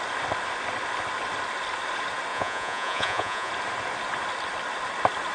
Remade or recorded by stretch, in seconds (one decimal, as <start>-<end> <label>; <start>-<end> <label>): 0.0-2.3 recorded; 2.3-3.5 remade; 3.5-5.3 recorded